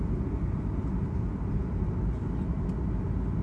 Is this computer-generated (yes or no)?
no